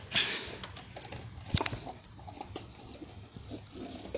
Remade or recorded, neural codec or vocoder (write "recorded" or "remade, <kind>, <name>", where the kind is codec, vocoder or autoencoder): recorded